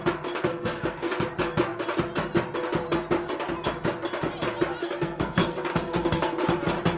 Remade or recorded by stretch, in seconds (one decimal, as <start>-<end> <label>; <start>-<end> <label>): 0.0-0.5 recorded; 0.5-1.1 remade; 1.1-4.8 recorded; 4.8-6.3 remade; 6.3-7.0 recorded